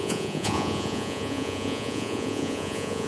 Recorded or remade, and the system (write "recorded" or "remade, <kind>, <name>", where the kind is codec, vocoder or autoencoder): remade, vocoder, Vocos